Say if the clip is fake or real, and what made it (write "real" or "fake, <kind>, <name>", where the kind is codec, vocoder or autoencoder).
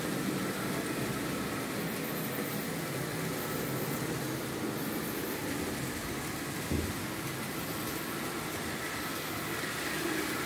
real